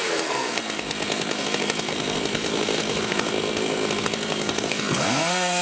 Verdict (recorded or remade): remade